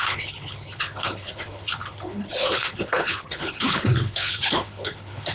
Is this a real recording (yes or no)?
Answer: no